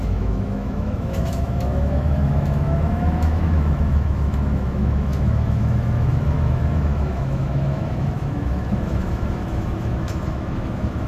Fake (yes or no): yes